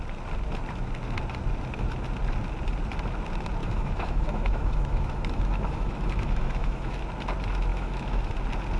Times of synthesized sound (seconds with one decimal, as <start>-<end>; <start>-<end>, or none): 3.6-7.0; 7.7-8.3